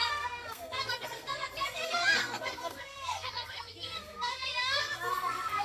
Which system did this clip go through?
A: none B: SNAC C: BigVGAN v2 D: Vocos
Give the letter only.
B